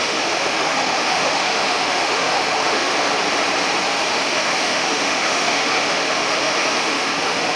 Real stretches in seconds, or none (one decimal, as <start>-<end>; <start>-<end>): 2.9-4.1